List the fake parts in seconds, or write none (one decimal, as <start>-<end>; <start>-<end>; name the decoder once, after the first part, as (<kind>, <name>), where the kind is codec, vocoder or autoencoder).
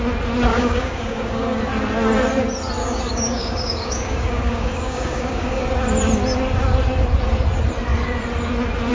0.5-1.6 (codec, DAC); 2.8-5.6